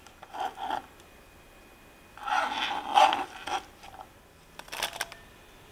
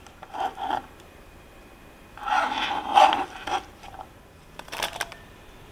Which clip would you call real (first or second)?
first